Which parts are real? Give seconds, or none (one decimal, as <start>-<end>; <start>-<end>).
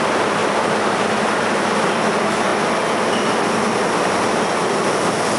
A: 0.0-0.4; 1.6-5.4